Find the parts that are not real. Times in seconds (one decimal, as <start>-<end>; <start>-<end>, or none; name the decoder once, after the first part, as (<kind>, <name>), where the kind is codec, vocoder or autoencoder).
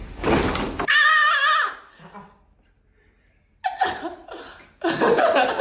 none